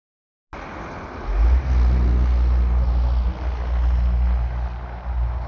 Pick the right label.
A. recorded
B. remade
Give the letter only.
A